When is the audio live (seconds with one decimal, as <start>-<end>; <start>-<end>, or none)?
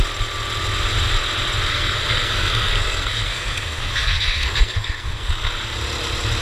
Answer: 0.0-1.7; 5.5-6.4